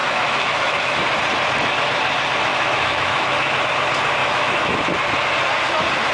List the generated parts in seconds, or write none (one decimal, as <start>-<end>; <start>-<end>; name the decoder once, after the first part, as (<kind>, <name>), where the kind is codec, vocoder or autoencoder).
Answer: 0.0-1.0 (autoencoder, DAC-VAE); 2.5-3.6; 4.2-4.8